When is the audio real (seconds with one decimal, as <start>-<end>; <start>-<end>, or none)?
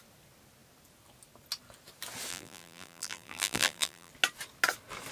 0.0-2.3; 4.1-5.1